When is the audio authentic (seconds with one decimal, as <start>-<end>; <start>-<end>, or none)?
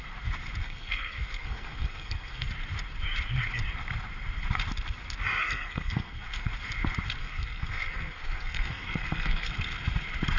0.0-0.6; 2.5-5.4; 6.5-7.2; 9.5-10.4